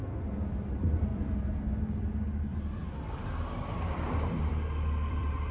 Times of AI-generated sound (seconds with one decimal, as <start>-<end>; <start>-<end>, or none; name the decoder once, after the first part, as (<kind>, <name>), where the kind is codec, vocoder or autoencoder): 0.6-1.1 (vocoder, BigVGAN v2); 2.4-5.5